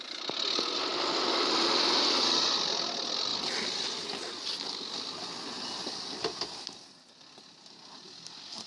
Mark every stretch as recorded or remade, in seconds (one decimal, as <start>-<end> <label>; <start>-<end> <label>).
0.0-8.7 recorded